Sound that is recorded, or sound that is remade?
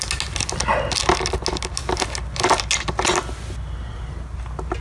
recorded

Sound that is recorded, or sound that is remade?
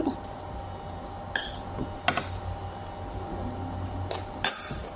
recorded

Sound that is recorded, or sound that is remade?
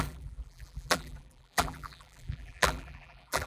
remade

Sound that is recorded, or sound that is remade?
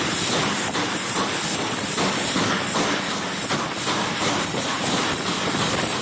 remade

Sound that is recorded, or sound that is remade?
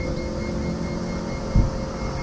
recorded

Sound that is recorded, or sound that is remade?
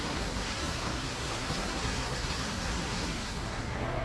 remade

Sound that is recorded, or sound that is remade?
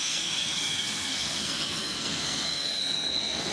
remade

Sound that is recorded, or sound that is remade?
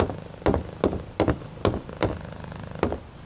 recorded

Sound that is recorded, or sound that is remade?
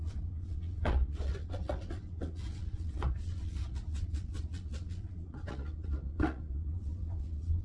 remade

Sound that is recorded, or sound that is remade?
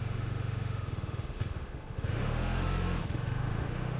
remade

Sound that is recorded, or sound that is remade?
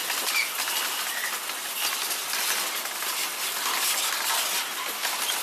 recorded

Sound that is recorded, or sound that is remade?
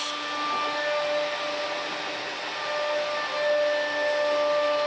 recorded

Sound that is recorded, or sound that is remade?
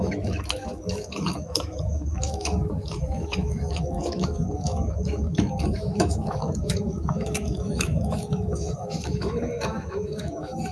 remade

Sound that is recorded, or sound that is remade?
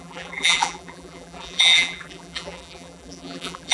remade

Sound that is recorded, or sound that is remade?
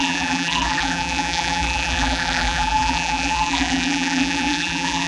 remade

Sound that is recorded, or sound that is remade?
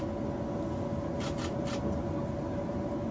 recorded